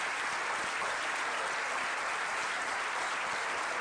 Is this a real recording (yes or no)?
yes